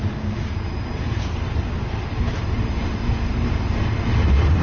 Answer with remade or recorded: remade